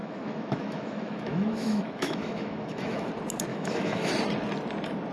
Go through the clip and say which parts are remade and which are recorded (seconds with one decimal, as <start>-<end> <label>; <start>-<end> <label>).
0.0-3.1 remade; 3.1-3.5 recorded; 3.5-4.1 remade; 4.1-5.1 recorded